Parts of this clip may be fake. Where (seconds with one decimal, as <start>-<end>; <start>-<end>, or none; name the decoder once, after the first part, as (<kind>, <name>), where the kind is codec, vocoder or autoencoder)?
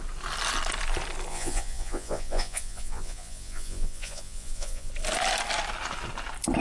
1.3-4.9 (vocoder, Vocos)